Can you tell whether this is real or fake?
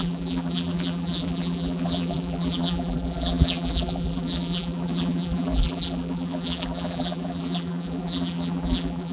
fake